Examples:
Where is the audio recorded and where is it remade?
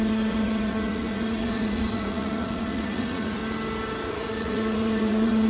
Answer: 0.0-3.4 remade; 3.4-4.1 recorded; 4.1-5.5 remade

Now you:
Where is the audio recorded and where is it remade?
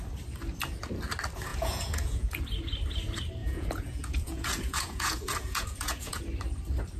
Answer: 0.0-1.5 recorded; 1.5-2.4 remade; 2.4-3.4 recorded; 3.4-6.2 remade; 6.2-7.0 recorded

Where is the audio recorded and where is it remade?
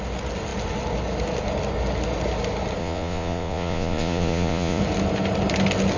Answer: 0.0-2.8 recorded; 2.8-4.8 remade; 4.8-6.0 recorded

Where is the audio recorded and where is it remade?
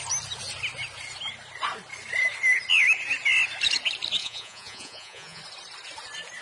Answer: 0.0-4.2 recorded; 4.2-5.4 remade; 5.4-6.4 recorded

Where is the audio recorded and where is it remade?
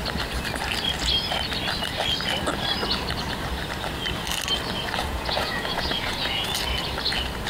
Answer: 0.0-5.0 recorded; 5.0-6.5 remade; 6.5-7.5 recorded